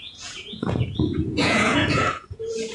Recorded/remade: remade